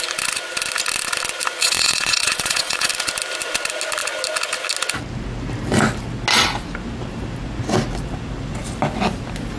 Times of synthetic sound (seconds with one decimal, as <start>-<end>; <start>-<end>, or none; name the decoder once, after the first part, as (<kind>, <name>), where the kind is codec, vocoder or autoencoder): 1.6-2.9 (vocoder, WaveNeXt)